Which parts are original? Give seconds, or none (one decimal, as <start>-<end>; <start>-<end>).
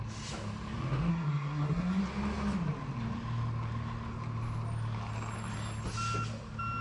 0.0-1.1; 2.0-6.8